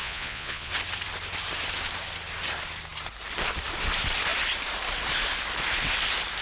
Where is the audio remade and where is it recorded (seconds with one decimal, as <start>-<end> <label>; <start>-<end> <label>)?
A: 0.0-0.7 remade; 0.7-6.4 recorded